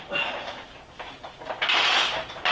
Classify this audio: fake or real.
real